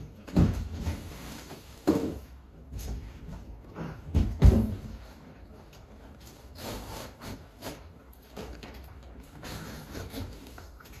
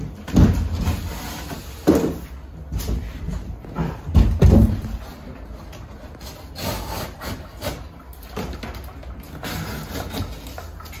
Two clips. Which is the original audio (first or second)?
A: second